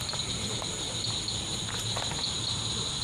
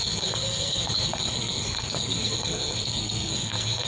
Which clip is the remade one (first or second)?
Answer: second